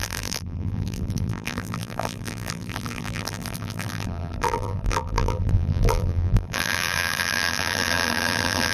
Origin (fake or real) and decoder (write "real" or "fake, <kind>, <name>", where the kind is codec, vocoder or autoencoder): fake, vocoder, BigVGAN v2